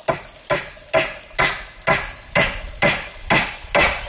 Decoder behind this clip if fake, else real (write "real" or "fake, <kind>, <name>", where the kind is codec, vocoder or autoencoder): real